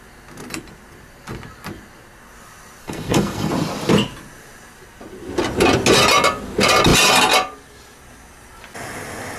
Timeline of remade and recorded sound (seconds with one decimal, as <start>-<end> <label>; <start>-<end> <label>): 0.0-2.8 recorded; 2.8-3.5 remade; 3.5-9.4 recorded